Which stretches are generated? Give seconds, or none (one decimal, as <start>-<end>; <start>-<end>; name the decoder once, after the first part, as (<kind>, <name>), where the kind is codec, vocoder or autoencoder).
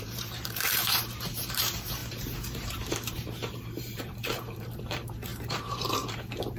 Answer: 0.0-6.6 (vocoder, BigVGAN v2)